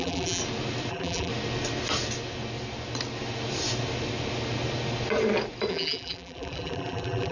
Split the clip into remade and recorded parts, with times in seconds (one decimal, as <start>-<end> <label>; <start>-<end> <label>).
0.0-0.4 remade; 0.4-0.9 recorded; 0.9-1.3 remade; 1.3-5.7 recorded; 5.7-7.3 remade